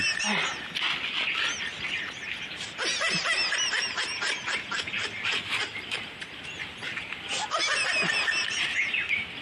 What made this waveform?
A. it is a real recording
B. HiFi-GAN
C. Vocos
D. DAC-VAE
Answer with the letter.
A